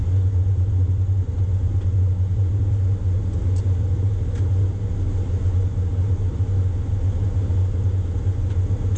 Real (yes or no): yes